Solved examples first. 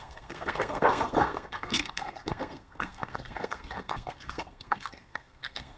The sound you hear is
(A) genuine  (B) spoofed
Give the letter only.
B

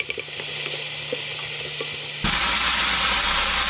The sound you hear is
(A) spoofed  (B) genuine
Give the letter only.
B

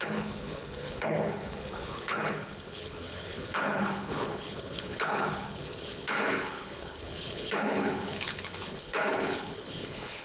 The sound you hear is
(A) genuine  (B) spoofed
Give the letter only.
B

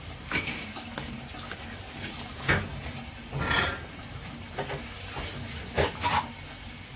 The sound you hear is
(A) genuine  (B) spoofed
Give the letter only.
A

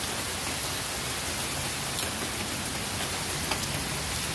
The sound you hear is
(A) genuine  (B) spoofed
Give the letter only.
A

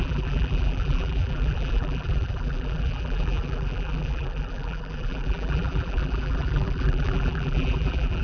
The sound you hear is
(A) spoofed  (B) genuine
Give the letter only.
A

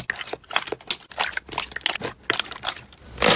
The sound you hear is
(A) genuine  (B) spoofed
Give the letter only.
A